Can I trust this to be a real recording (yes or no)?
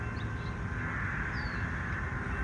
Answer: yes